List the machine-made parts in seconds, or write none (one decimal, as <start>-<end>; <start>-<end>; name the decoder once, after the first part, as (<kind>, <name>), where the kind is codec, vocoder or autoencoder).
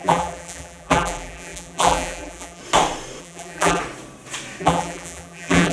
0.0-2.6 (vocoder, BigVGAN v2); 3.2-3.8; 4.6-5.7